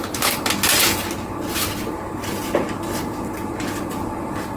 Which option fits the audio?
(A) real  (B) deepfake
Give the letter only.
A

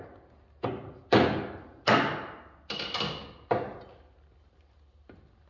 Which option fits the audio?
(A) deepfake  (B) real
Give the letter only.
B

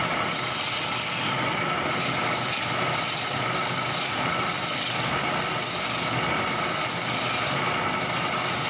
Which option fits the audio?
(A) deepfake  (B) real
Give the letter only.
B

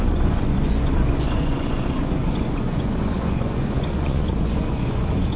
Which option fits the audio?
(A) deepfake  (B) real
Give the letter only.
A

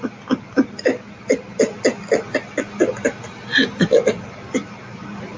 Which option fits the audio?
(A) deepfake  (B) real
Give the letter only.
B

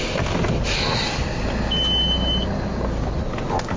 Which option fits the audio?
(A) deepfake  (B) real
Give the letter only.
B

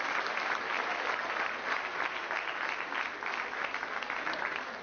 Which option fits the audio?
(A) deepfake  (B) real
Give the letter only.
B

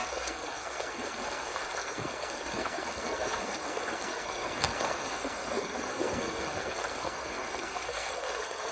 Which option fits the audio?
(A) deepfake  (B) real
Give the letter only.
A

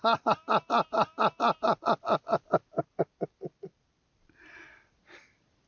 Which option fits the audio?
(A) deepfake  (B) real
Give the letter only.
B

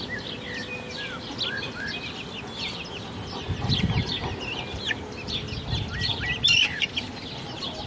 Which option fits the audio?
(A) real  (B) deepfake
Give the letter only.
A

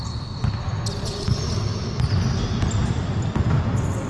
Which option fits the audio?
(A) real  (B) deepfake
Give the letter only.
A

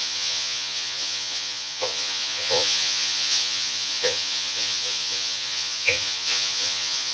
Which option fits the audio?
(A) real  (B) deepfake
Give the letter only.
B